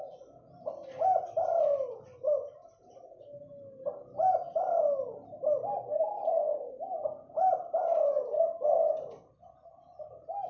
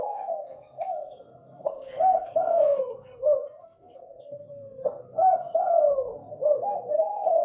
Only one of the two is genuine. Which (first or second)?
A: first